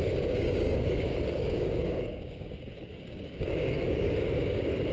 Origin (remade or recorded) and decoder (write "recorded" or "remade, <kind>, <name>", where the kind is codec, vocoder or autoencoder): remade, codec, DAC